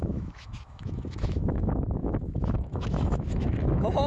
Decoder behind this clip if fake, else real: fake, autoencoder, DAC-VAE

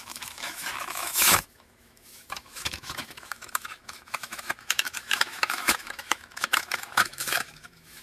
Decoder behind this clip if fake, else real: fake, autoencoder, DAC-VAE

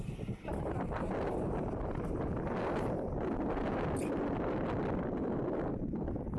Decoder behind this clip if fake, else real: real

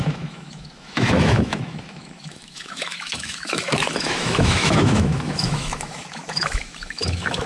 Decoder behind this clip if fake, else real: fake, autoencoder, DAC-VAE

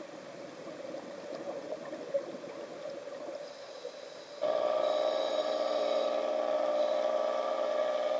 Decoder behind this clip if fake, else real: real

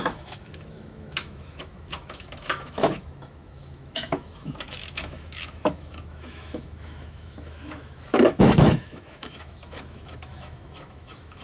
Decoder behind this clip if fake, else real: fake, autoencoder, DAC-VAE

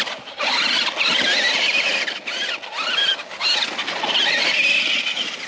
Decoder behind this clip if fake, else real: real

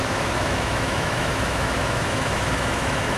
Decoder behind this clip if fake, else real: fake, autoencoder, DAC-VAE